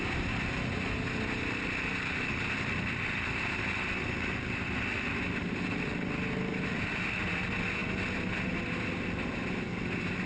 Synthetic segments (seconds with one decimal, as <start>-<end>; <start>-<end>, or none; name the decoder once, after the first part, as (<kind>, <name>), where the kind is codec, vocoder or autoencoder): none